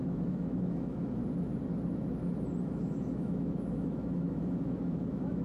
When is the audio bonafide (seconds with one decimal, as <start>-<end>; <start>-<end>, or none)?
1.2-2.6